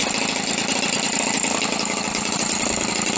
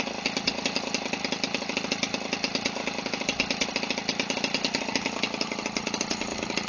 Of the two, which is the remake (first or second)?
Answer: first